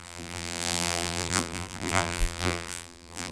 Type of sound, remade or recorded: remade